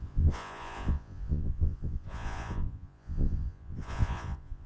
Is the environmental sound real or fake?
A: fake